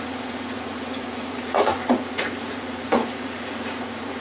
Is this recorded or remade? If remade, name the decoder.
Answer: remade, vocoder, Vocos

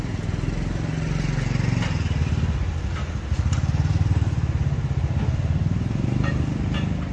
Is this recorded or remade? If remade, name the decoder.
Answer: recorded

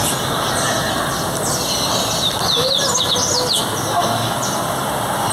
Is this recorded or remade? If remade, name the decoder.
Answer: recorded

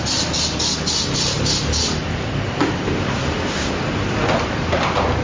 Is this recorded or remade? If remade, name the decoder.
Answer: recorded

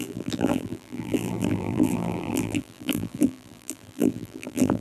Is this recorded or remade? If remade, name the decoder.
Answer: remade, vocoder, BigVGAN v2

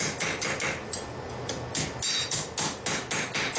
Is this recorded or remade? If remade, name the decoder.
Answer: recorded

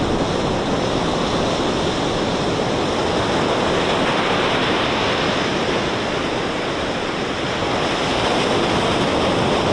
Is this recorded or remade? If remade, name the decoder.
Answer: recorded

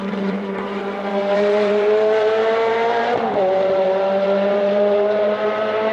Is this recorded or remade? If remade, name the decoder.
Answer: remade, vocoder, BigVGAN v2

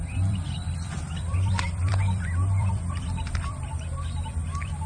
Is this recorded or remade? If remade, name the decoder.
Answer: remade, vocoder, BigVGAN v2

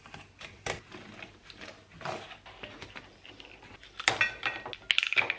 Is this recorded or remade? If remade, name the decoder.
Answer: recorded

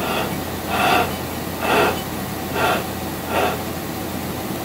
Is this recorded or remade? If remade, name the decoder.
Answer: recorded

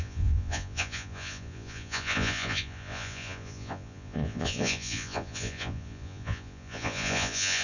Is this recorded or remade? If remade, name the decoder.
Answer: remade, vocoder, Vocos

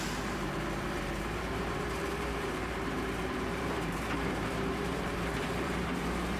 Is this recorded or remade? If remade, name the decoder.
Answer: remade, vocoder, BigVGAN v2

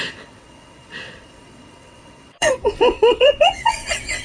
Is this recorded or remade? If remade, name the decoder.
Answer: remade, vocoder, WaveNeXt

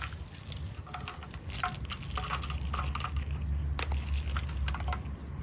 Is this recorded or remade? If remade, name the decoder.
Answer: recorded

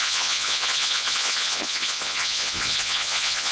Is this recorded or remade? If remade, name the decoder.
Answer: remade, vocoder, Vocos